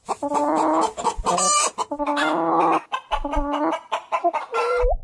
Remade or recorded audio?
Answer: recorded